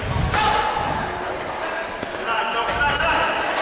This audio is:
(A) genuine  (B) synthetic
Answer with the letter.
B